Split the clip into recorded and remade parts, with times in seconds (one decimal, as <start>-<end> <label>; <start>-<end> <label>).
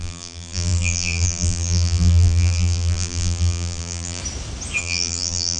0.0-4.2 remade; 4.2-4.8 recorded; 4.8-5.6 remade